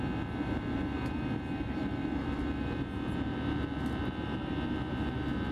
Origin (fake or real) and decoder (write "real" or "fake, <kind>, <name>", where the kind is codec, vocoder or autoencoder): fake, vocoder, BigVGAN v2